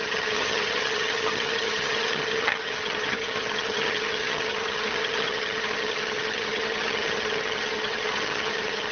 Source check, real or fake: fake